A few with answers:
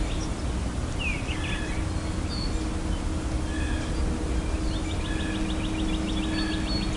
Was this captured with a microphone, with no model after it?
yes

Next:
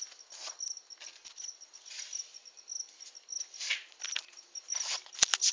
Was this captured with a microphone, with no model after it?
yes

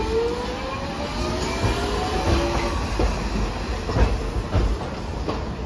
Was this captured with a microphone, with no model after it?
yes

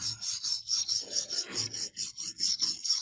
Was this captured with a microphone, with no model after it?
yes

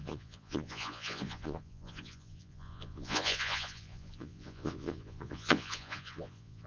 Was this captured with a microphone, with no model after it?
no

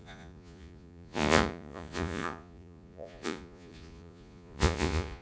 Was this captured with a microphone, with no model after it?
no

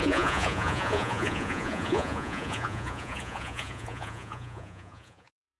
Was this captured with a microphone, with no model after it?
no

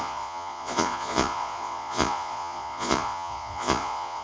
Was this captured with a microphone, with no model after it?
no